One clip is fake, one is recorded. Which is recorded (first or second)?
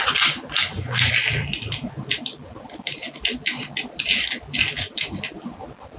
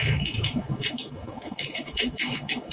first